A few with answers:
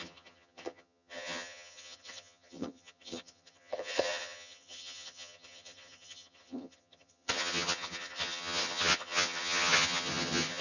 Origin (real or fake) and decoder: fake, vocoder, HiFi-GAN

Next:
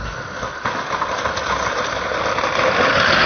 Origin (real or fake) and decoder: real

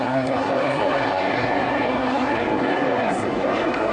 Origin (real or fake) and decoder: fake, codec, SNAC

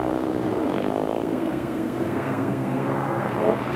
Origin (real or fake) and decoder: fake, codec, SNAC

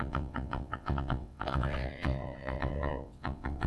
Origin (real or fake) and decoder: fake, vocoder, WaveNeXt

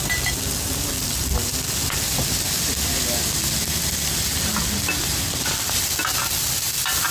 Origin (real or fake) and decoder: real